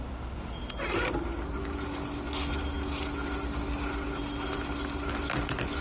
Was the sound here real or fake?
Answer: real